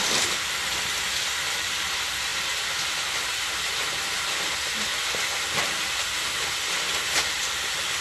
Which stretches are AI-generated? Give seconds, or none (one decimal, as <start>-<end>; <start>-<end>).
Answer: 0.0-2.3; 7.1-8.0

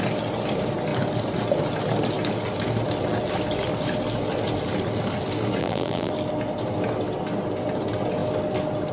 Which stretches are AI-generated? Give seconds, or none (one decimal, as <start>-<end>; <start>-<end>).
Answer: 5.6-6.1

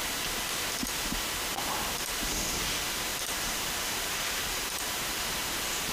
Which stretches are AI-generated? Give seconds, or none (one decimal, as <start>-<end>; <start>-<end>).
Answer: 1.5-2.2; 3.1-5.9

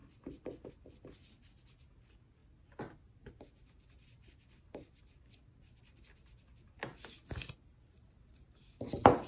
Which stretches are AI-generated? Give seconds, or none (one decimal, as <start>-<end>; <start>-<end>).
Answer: none

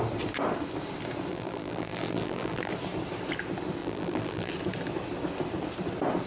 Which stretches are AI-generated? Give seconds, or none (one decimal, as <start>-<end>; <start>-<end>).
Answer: 1.3-2.7; 3.8-4.5

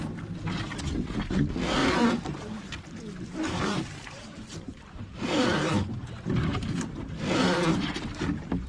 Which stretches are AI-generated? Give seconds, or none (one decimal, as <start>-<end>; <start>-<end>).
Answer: 1.8-6.1

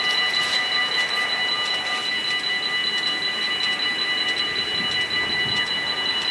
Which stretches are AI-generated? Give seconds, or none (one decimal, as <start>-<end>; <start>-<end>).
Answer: none